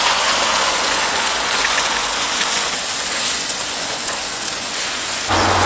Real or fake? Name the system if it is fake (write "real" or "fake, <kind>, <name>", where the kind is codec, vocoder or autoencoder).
fake, vocoder, Vocos